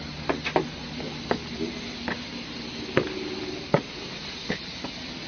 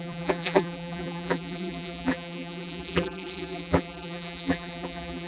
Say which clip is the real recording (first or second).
first